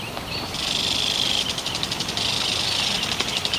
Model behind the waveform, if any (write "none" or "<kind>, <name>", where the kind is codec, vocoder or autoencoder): none